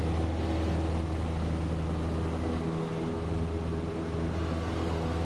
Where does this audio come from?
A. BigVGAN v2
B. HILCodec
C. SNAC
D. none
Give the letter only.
D